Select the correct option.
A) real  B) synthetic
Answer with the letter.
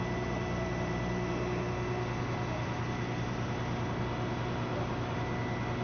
A